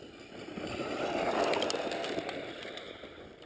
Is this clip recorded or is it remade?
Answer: recorded